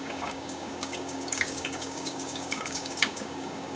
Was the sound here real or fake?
fake